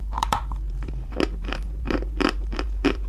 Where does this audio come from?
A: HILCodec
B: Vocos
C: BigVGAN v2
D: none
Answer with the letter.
C